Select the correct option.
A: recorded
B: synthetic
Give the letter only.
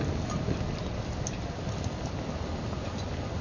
A